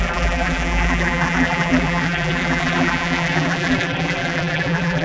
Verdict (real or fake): fake